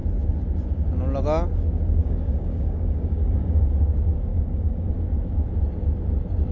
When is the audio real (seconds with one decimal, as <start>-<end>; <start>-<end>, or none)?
0.0-2.0; 3.6-4.3; 4.9-6.5